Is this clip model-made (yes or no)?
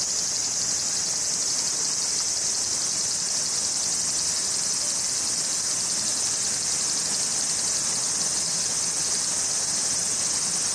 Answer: no